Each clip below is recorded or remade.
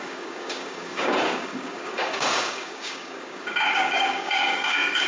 remade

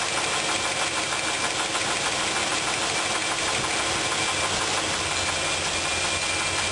recorded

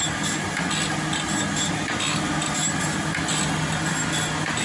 recorded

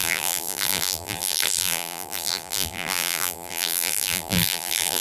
remade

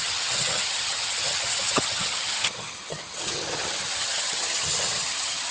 remade